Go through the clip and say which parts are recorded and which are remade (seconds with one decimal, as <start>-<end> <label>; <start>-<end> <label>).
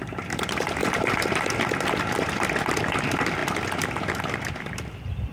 0.0-0.8 recorded; 0.8-1.4 remade; 1.4-5.3 recorded